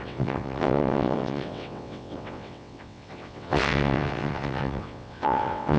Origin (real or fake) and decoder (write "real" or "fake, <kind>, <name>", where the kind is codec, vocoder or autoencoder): fake, vocoder, WaveNeXt